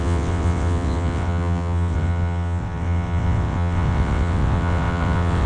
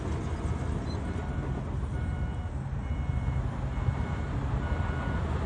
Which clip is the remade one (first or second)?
first